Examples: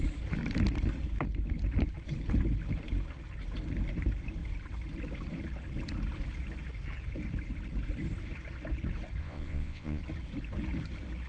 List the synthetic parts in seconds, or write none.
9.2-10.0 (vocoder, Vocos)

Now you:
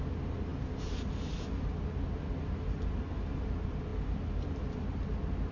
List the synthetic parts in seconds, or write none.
none

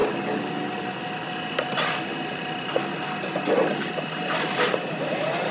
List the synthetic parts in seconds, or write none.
2.1-5.5 (vocoder, BigVGAN v2)

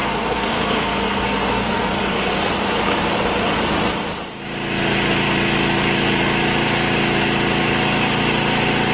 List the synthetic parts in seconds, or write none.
0.0-2.5 (codec, SNAC)

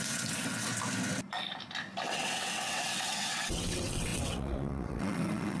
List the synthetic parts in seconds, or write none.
0.0-0.7 (vocoder, WaveNeXt); 2.1-5.6

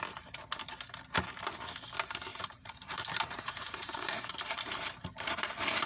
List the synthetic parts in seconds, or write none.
2.3-5.9 (vocoder, BigVGAN v2)